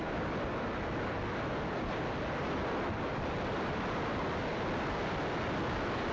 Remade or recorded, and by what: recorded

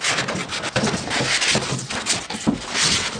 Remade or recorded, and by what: recorded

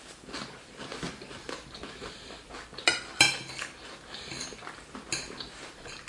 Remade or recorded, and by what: recorded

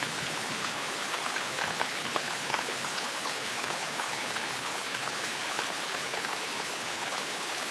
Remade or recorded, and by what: remade, codec, HILCodec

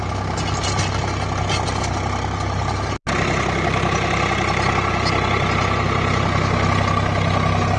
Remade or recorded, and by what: recorded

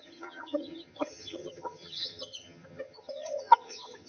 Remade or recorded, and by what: remade, vocoder, HiFi-GAN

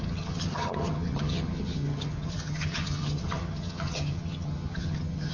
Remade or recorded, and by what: remade, vocoder, HiFi-GAN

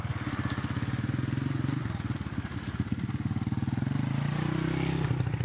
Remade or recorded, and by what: recorded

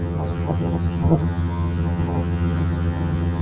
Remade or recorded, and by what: remade, vocoder, HiFi-GAN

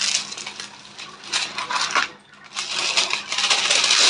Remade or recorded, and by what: recorded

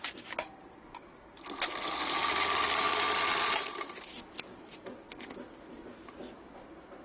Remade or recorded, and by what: recorded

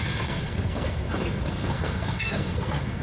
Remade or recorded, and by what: remade, codec, SNAC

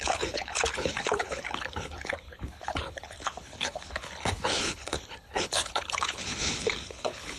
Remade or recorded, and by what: remade, codec, HILCodec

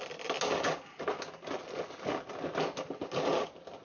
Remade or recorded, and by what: recorded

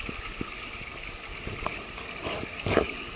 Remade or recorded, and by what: recorded